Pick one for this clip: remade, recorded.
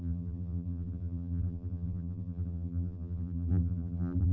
remade